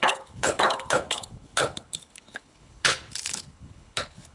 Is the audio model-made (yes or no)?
yes